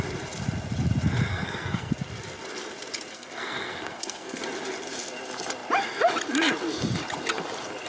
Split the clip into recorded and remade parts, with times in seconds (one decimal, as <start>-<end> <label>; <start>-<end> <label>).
0.0-1.3 recorded; 1.3-1.9 remade; 1.9-3.1 recorded; 3.1-4.4 remade; 4.4-7.9 recorded